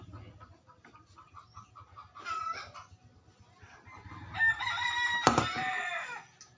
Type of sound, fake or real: real